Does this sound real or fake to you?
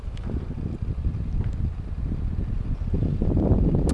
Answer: real